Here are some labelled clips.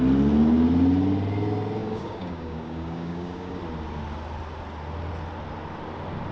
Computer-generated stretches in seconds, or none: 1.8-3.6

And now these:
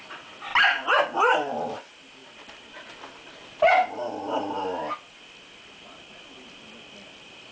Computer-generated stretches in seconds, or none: none

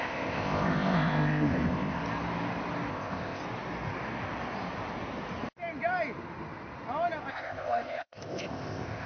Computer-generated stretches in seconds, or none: 0.0-2.0; 2.9-3.4; 7.3-9.1

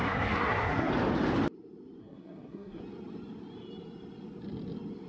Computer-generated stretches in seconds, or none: 0.0-0.9; 2.0-2.8

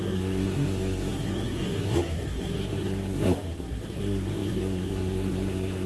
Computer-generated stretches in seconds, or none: 0.0-5.9

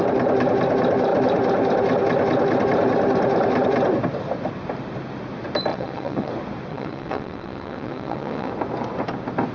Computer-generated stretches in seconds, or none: 5.7-6.3; 6.7-8.5